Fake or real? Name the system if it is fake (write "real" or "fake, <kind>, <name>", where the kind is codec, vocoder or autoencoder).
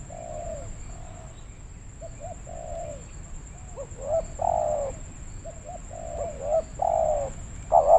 real